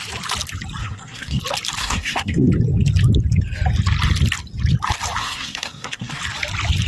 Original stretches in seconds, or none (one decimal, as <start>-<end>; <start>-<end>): 0.0-0.8; 1.4-1.8; 2.5-5.2; 6.2-6.9

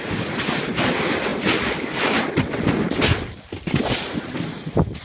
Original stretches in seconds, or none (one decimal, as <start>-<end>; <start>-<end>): 0.0-5.0

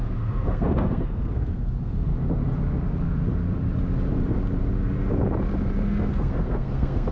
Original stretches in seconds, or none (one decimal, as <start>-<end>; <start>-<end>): 2.1-6.1

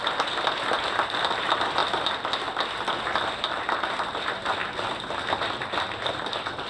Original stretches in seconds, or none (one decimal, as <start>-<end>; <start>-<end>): 0.0-6.7

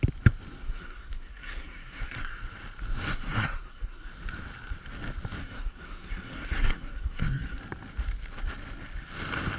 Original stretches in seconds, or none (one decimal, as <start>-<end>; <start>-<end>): 0.0-0.6; 2.3-3.1; 4.1-5.4; 7.6-9.6

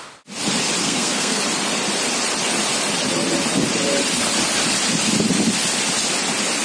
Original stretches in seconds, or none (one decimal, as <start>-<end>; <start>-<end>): 0.0-0.8; 1.4-6.6

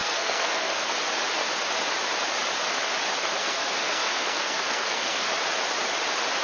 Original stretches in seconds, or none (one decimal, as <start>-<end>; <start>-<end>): 0.9-3.4; 5.3-6.4